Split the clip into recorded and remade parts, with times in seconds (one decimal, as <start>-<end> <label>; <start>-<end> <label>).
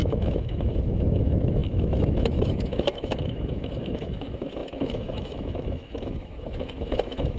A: 0.0-7.4 remade